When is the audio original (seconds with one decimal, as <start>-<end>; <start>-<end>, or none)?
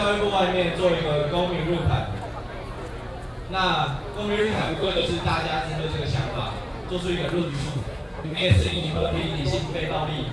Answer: 0.0-4.4; 5.1-7.4; 9.2-10.3